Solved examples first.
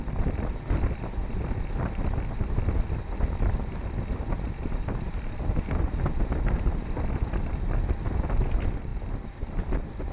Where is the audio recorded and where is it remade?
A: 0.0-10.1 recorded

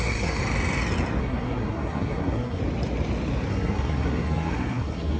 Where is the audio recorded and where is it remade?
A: 0.0-0.4 remade; 0.4-1.2 recorded; 1.2-2.6 remade; 2.6-3.5 recorded; 3.5-5.2 remade

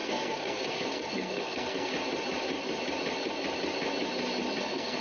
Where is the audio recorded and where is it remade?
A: 0.0-1.9 remade; 1.9-4.6 recorded; 4.6-5.0 remade

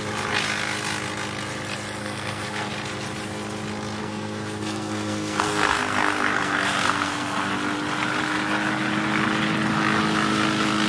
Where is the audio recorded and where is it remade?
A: 0.0-2.0 recorded; 2.0-2.7 remade; 2.7-4.0 recorded; 4.0-7.5 remade; 7.5-10.9 recorded